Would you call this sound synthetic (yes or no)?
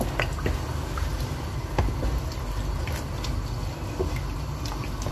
no